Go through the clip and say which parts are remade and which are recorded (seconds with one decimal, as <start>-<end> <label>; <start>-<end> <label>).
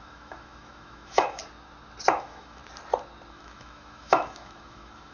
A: 0.0-1.4 remade; 1.4-2.1 recorded; 2.1-2.6 remade; 2.6-3.3 recorded; 3.3-5.1 remade